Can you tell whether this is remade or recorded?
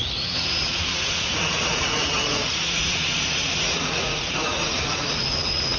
remade